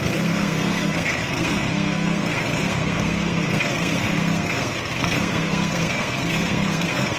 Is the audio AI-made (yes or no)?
yes